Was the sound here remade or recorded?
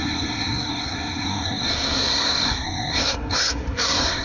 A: remade